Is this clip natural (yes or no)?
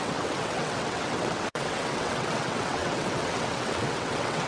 no